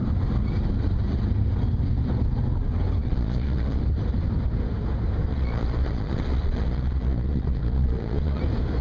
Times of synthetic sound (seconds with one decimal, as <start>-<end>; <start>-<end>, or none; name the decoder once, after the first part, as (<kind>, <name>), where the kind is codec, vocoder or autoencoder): 3.0-3.8 (vocoder, Vocos); 5.3-8.4